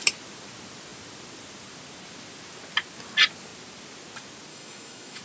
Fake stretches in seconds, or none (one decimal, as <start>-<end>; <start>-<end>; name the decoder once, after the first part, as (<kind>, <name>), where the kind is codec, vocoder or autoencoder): 4.5-5.2 (autoencoder, DAC-VAE)